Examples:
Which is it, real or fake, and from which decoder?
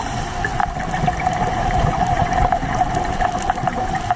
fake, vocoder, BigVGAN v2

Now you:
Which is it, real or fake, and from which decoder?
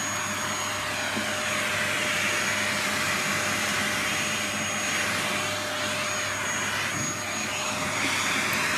real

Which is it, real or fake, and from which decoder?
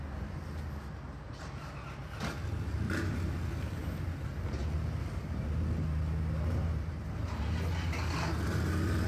real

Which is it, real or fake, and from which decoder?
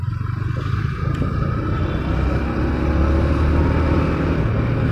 real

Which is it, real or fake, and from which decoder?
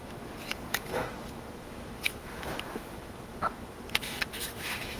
fake, autoencoder, DAC-VAE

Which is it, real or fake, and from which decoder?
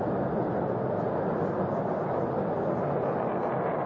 real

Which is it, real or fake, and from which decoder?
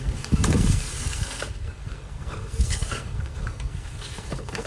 fake, codec, SNAC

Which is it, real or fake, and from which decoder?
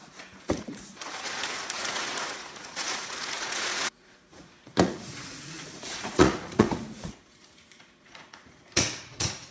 fake, vocoder, Vocos